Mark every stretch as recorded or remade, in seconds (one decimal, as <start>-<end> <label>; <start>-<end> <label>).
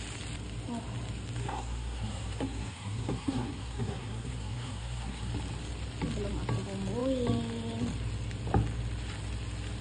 0.0-1.4 recorded; 1.4-5.3 remade; 5.3-9.8 recorded